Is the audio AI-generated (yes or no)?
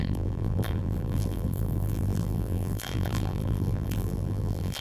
yes